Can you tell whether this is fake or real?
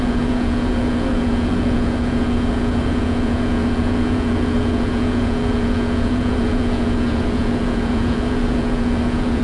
fake